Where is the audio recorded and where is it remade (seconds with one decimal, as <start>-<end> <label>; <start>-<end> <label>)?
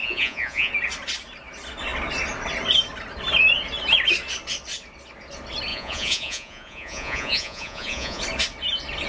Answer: 0.0-0.7 remade; 0.7-5.7 recorded; 5.7-8.2 remade; 8.2-9.1 recorded